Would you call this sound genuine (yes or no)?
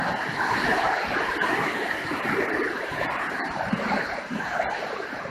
no